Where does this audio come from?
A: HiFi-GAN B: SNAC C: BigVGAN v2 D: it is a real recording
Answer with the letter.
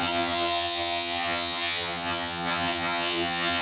A